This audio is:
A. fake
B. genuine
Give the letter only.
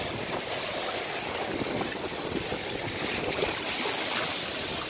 B